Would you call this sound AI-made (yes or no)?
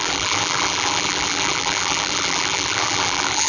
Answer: yes